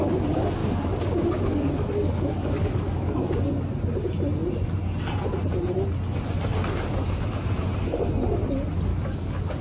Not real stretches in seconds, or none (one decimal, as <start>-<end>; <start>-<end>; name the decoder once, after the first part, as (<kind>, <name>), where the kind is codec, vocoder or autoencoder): 0.6-3.5 (codec, DAC); 8.9-9.6